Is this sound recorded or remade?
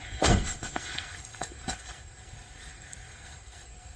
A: remade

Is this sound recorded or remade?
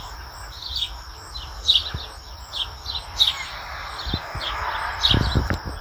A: recorded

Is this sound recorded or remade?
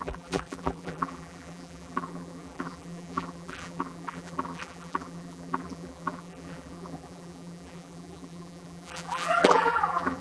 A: remade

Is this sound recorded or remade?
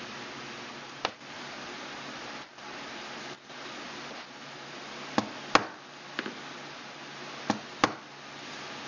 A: recorded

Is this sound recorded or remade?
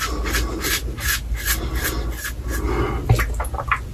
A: recorded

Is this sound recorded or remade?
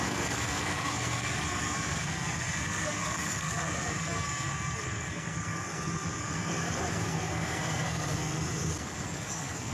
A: remade